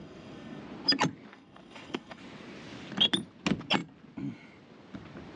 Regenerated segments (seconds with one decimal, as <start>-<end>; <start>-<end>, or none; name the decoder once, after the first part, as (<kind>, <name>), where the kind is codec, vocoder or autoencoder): 0.0-0.6 (codec, SNAC); 1.3-2.2